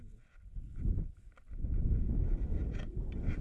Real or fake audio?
real